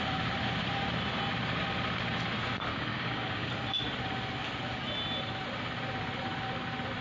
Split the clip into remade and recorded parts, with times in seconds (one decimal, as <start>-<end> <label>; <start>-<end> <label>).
0.0-2.7 recorded; 2.7-3.5 remade; 3.5-7.0 recorded